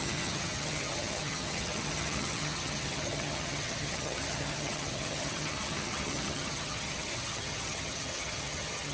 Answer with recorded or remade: remade